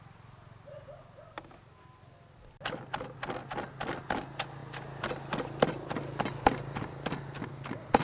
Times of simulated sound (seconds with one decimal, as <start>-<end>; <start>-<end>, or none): none